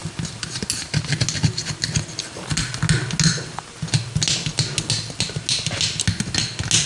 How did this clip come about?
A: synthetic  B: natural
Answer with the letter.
B